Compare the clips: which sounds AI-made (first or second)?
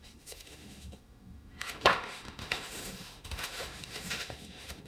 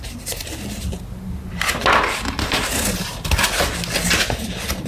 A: first